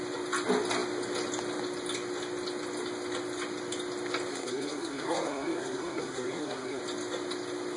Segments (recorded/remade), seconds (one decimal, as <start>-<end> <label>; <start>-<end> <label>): 0.0-4.3 recorded; 4.3-6.8 remade; 6.8-7.8 recorded